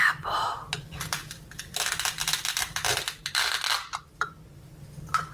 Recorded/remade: recorded